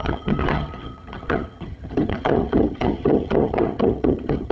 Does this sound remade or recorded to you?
remade